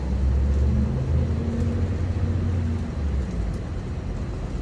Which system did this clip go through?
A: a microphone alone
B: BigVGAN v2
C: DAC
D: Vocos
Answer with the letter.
A